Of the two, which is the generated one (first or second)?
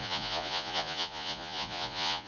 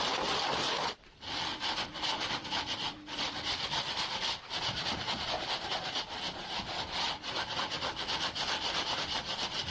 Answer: first